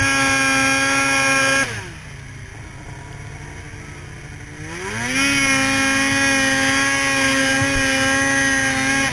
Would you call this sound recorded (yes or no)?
yes